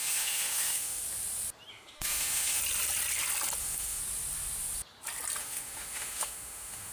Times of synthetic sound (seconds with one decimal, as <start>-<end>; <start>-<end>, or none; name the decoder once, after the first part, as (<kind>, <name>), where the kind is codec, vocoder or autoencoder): 0.0-1.0 (autoencoder, DAC-VAE); 1.7-2.6; 3.6-4.0; 5.4-6.9